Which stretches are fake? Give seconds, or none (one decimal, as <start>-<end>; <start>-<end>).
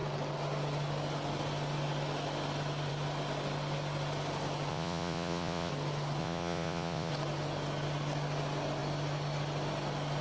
4.7-5.7; 6.2-7.1